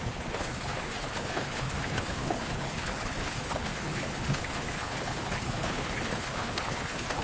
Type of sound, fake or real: fake